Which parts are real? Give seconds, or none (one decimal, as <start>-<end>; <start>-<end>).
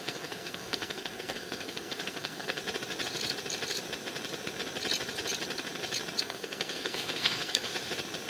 2.6-6.2; 7.7-8.3